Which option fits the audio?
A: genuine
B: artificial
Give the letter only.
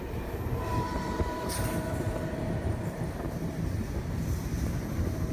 B